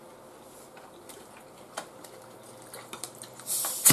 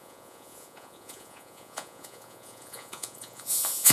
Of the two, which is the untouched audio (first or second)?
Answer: first